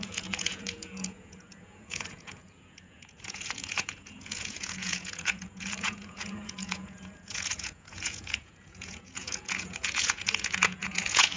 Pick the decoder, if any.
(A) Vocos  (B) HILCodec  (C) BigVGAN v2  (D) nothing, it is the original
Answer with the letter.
A